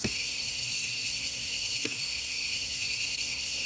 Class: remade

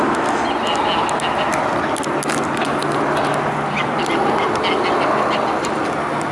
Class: recorded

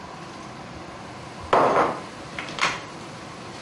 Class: recorded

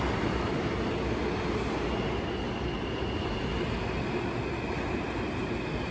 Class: recorded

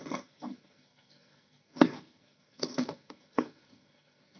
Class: remade